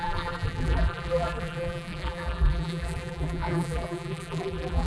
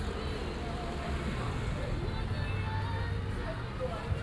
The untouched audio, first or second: second